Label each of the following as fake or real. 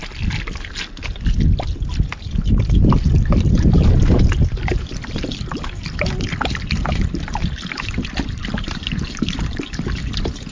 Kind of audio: real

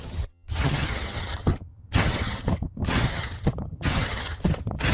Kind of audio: fake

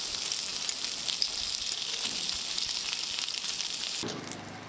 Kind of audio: real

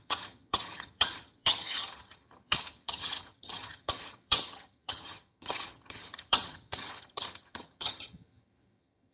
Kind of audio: fake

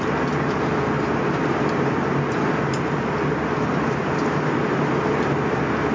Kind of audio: real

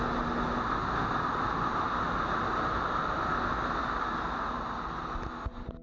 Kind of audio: real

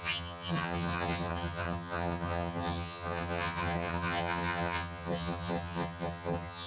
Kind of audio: fake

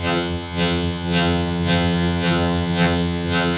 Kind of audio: fake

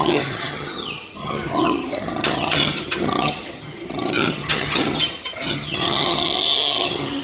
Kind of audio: fake